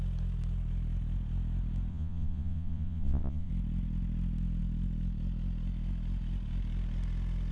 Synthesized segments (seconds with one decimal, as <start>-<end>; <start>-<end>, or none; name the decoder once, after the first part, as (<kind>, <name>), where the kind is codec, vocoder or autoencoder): 1.9-3.5 (vocoder, Vocos)